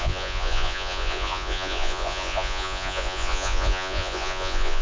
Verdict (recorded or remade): remade